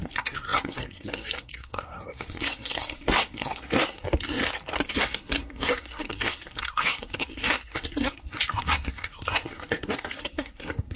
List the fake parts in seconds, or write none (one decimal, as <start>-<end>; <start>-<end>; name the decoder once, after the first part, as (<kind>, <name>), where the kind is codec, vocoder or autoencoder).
0.0-4.4 (codec, SNAC); 4.9-11.0